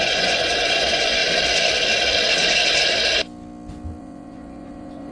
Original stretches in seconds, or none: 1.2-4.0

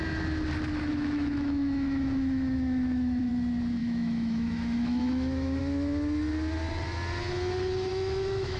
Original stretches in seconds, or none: 0.0-0.9; 3.3-3.8; 5.6-7.9